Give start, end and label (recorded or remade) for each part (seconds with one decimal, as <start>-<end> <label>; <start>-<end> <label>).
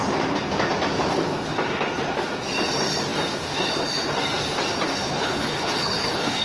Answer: 0.0-4.9 recorded; 4.9-6.4 remade